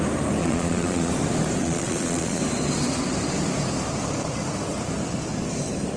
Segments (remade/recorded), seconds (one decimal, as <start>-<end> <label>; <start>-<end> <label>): 0.0-0.4 recorded; 0.4-1.1 remade; 1.1-1.6 recorded; 1.6-2.4 remade; 2.4-6.0 recorded